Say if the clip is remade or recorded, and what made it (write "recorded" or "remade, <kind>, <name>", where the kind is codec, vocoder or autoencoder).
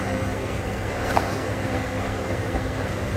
remade, codec, SNAC